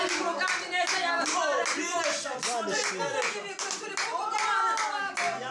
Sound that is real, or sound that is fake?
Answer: real